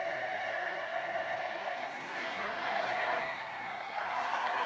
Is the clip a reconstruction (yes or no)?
yes